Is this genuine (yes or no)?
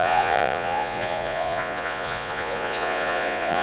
no